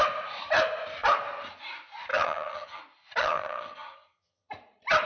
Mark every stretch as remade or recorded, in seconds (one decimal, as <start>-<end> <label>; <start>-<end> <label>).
0.0-2.1 recorded; 2.1-2.8 remade; 2.8-3.2 recorded; 3.2-4.5 remade; 4.5-5.1 recorded